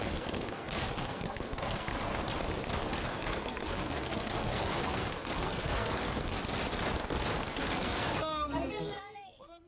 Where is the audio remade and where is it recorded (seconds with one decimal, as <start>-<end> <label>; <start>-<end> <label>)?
0.0-2.1 remade; 2.1-2.9 recorded; 2.9-6.4 remade; 6.4-7.4 recorded; 7.4-9.7 remade